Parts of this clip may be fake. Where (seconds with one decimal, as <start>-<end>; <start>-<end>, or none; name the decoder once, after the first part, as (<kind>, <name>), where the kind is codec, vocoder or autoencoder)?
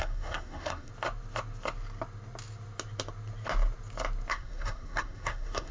0.0-0.9 (codec, SNAC); 4.3-5.7